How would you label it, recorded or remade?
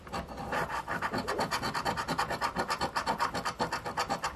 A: recorded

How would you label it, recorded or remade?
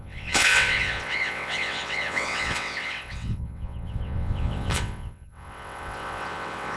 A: remade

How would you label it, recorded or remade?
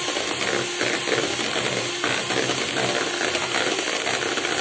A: recorded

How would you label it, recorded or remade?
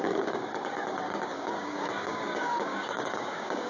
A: remade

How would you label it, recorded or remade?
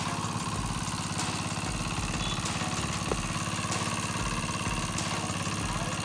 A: recorded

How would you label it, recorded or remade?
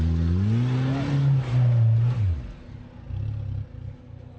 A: recorded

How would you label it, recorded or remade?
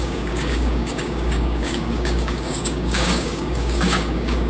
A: remade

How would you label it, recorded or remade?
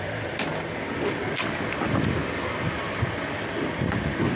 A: recorded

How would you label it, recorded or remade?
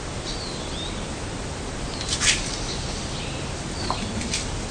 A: recorded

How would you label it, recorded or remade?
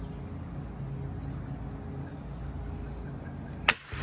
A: recorded